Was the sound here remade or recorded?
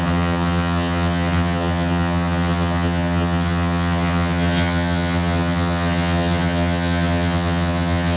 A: remade